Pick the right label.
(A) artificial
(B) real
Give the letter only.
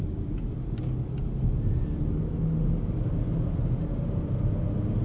B